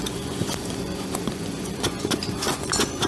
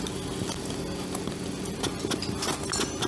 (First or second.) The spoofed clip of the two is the first